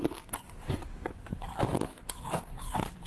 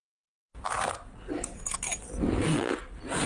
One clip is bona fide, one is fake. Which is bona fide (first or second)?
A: second